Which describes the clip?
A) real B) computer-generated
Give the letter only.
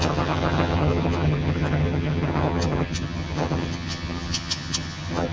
B